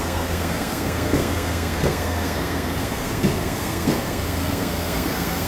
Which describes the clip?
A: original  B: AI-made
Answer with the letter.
B